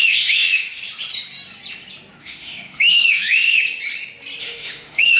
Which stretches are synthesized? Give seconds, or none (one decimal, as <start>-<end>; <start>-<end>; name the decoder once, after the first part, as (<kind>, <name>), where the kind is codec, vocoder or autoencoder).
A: 0.0-0.8 (autoencoder, DAC-VAE); 2.2-3.6; 4.4-5.2